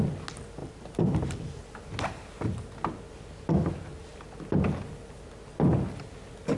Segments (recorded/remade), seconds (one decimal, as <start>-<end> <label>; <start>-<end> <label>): 0.0-0.6 recorded; 0.6-1.6 remade; 1.6-6.6 recorded